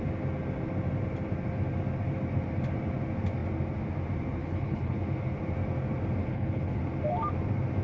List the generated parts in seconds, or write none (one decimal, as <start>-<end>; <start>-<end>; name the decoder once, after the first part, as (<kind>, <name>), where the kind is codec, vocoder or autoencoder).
4.4-5.0 (codec, HILCodec); 6.2-6.8